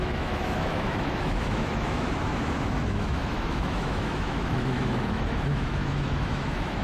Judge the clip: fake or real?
fake